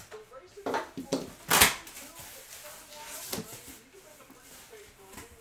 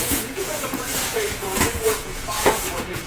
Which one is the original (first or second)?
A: first